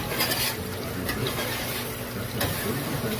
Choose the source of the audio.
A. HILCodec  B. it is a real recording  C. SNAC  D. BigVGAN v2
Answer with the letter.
B